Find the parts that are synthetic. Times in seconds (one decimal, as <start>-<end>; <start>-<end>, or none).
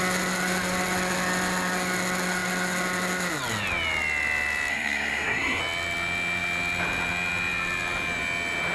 4.7-5.6